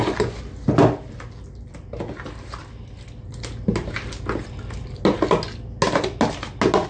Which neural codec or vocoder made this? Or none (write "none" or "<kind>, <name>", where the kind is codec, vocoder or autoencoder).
none